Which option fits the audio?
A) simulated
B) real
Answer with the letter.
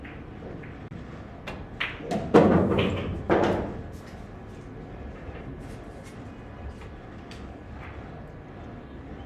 B